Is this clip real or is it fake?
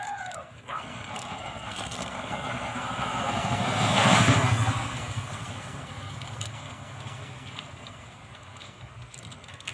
fake